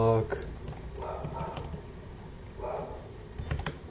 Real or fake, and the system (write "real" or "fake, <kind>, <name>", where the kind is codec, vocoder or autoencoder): real